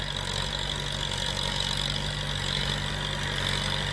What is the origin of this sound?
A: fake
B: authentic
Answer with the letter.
B